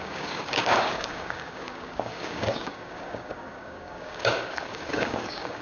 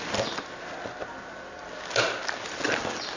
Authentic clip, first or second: second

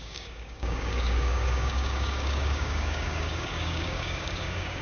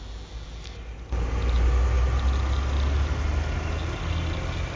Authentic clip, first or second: second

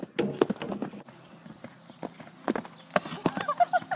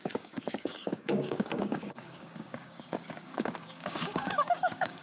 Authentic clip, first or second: first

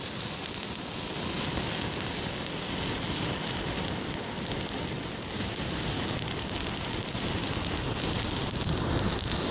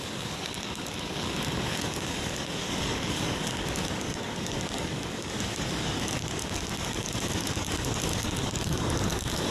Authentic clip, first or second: first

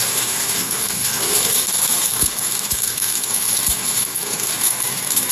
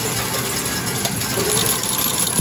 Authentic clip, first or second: second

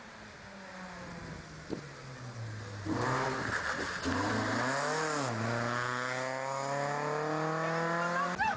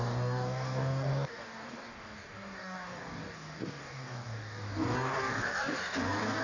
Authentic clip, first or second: first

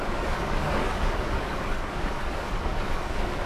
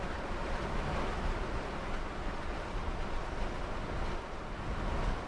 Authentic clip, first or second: second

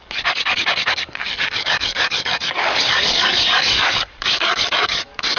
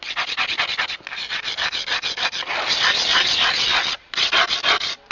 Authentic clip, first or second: second